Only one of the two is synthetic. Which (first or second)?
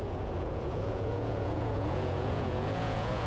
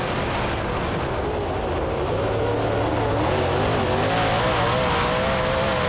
first